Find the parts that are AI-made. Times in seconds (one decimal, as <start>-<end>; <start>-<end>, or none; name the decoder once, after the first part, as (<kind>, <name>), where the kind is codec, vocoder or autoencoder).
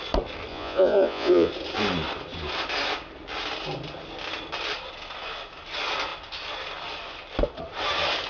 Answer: 0.5-1.5 (vocoder, Vocos)